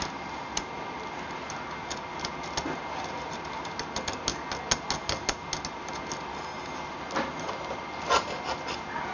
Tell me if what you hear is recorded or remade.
recorded